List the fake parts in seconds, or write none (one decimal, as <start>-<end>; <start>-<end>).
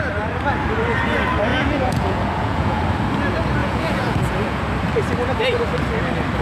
1.5-2.8; 3.6-4.6